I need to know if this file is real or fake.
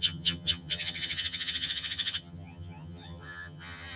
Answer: fake